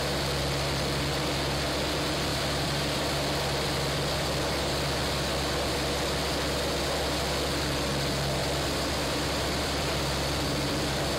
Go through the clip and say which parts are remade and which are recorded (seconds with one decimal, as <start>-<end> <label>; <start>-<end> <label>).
0.0-2.3 recorded; 2.3-3.0 remade; 3.0-8.4 recorded; 8.4-11.2 remade